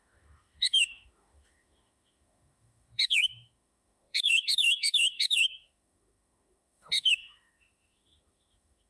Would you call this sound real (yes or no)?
no